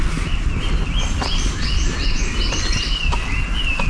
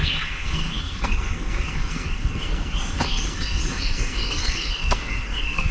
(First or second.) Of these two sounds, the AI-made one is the second